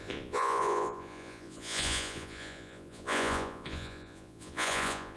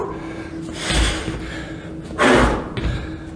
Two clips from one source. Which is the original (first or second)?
second